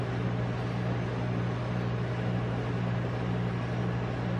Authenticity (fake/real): real